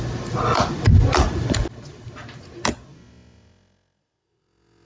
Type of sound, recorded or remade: recorded